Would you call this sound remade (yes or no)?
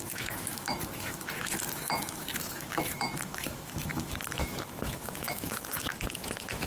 yes